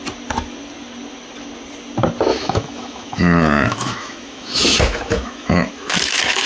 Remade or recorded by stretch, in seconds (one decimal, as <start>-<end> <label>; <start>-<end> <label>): 0.0-2.3 recorded; 2.3-6.5 remade